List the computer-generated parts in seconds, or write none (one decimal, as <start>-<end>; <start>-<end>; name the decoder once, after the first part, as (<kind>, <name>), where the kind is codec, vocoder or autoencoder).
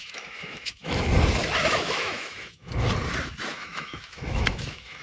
0.0-1.1 (autoencoder, DAC-VAE); 1.6-2.7; 3.5-5.0